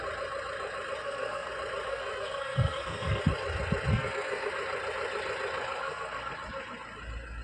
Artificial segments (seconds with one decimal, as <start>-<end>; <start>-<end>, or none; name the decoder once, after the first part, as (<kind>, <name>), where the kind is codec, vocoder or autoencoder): 1.0-1.5 (codec, SNAC); 1.9-3.2; 3.9-4.5; 5.8-6.3